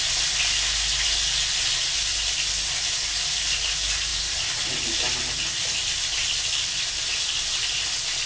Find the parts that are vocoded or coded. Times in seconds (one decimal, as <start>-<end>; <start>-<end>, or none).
none